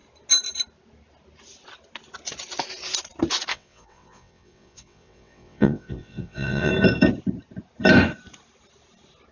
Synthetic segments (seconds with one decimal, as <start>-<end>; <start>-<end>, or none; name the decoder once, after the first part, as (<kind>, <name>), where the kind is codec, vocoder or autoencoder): 3.5-6.7 (vocoder, WaveNeXt)